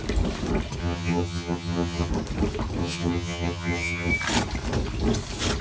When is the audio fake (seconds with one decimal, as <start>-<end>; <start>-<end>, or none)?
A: 0.8-2.1; 2.8-4.1